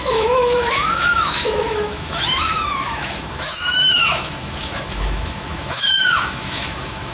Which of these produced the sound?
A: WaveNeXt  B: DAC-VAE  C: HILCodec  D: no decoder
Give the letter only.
B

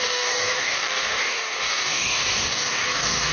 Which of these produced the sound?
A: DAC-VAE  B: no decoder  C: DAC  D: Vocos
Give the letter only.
C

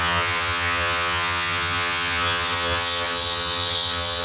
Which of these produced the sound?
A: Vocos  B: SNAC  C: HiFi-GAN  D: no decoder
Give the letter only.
C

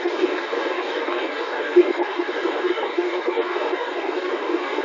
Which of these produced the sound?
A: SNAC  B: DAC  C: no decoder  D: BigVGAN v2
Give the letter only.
B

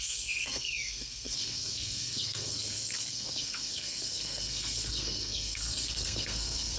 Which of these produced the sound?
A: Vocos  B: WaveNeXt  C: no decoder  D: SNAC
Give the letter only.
D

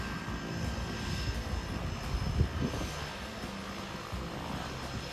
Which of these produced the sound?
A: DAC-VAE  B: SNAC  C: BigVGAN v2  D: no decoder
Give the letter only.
D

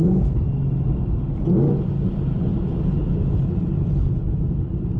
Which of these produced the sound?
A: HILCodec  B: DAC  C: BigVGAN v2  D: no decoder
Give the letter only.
D